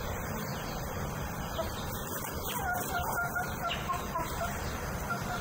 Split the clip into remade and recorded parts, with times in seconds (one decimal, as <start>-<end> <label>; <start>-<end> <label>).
0.0-5.4 recorded